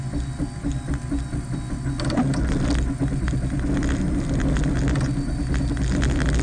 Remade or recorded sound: recorded